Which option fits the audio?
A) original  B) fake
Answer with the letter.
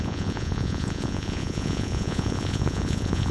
B